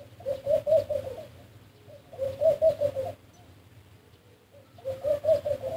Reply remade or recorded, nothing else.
recorded